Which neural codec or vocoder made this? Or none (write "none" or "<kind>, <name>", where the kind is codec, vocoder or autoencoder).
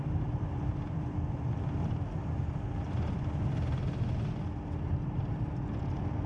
vocoder, BigVGAN v2